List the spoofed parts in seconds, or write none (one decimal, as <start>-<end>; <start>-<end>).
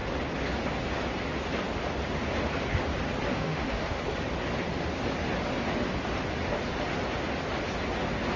3.3-4.0